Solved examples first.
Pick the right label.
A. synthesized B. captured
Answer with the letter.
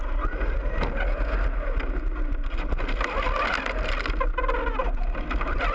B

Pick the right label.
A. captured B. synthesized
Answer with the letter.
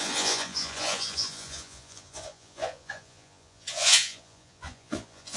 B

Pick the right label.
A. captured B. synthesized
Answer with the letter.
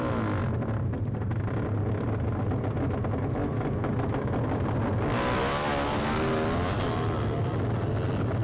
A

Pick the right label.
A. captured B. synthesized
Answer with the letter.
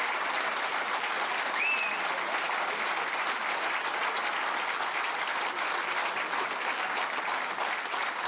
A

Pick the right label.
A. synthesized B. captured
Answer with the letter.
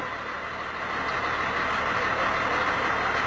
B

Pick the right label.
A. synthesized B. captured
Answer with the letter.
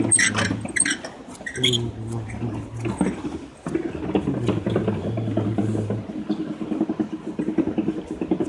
B